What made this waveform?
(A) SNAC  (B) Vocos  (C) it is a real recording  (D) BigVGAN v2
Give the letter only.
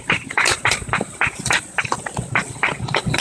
C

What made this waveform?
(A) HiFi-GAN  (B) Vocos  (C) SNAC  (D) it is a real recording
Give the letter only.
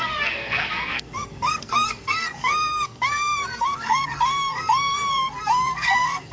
C